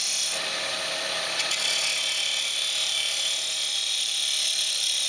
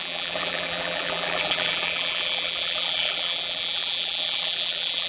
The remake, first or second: second